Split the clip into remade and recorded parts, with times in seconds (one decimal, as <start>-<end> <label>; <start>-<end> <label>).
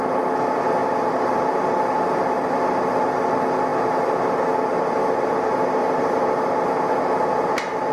0.0-0.8 recorded; 0.8-1.4 remade; 1.4-5.8 recorded; 5.8-6.8 remade; 6.8-7.9 recorded